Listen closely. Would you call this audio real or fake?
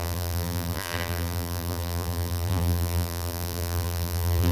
fake